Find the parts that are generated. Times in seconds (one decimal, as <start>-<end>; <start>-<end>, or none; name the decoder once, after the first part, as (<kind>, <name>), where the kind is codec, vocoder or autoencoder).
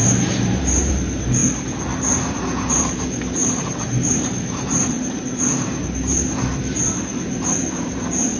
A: 0.0-1.4 (vocoder, BigVGAN v2); 2.7-8.4